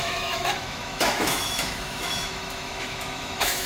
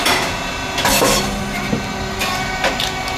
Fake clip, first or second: first